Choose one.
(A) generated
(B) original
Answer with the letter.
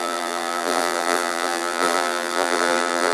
A